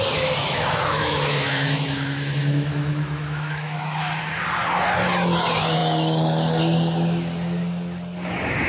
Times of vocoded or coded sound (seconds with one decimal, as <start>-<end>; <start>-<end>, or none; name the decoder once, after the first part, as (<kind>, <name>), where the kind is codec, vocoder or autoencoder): 0.4-4.2 (autoencoder, DAC-VAE)